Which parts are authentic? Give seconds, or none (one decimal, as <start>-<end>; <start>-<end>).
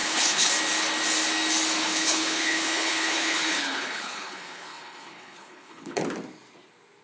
0.5-1.8; 6.0-7.0